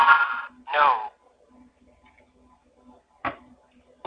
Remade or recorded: recorded